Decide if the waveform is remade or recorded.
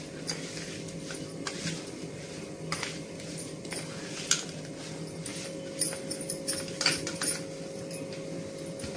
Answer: recorded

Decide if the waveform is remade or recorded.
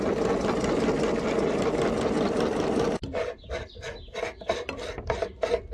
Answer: recorded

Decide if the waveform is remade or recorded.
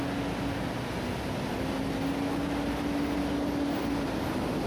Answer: recorded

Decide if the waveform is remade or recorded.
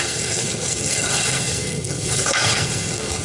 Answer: remade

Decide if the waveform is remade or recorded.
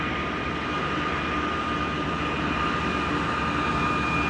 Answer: recorded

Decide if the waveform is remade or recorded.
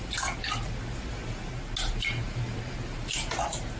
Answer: recorded